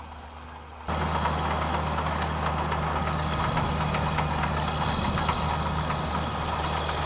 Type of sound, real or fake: real